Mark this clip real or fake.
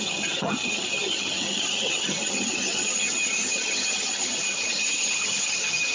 fake